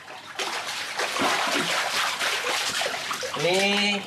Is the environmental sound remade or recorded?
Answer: recorded